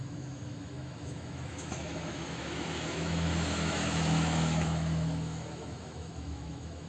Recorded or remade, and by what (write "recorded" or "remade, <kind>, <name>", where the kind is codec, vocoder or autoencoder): remade, autoencoder, DAC-VAE